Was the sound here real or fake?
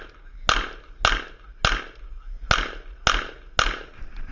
real